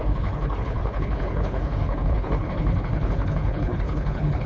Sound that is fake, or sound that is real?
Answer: fake